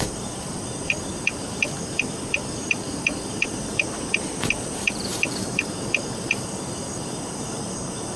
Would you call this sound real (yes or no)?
no